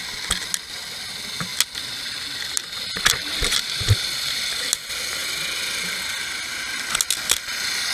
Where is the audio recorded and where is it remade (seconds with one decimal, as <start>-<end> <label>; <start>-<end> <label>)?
0.0-7.9 recorded